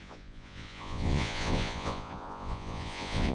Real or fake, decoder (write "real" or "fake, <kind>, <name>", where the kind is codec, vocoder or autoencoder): fake, vocoder, Vocos